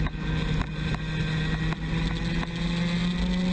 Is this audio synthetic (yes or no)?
no